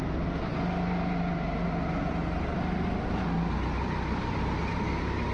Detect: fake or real real